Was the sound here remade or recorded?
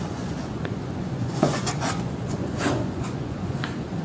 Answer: remade